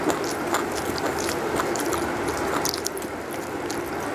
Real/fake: real